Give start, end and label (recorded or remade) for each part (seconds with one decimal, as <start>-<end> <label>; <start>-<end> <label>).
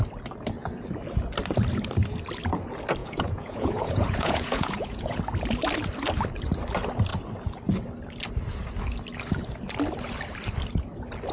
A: 0.0-3.0 recorded; 3.0-5.2 remade; 5.2-11.3 recorded